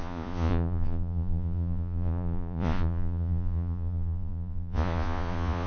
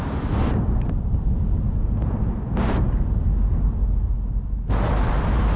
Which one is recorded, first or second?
second